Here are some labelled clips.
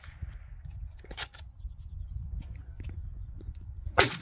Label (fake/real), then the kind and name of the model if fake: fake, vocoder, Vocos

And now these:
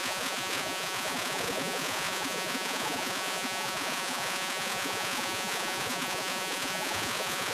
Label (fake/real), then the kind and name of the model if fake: fake, vocoder, Vocos